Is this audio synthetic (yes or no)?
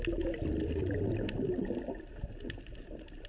no